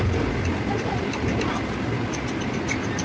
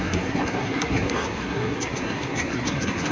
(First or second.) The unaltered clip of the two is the first